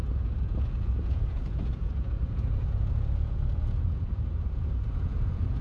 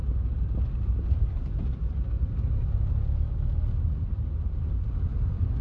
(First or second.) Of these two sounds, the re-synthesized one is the first